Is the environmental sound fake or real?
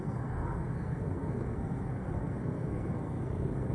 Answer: fake